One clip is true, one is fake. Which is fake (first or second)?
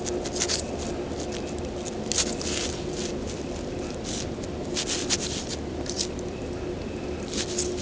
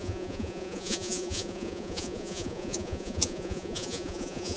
second